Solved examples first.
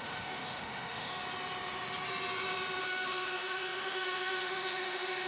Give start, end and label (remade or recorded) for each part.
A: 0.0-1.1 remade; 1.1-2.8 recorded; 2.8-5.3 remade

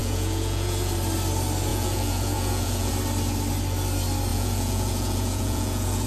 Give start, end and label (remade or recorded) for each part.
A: 0.0-0.9 remade; 0.9-1.7 recorded; 1.7-2.9 remade; 2.9-4.3 recorded; 4.3-6.1 remade

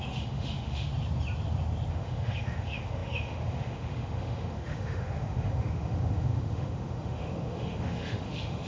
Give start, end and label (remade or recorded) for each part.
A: 0.0-0.9 remade; 0.9-1.9 recorded; 1.9-8.7 remade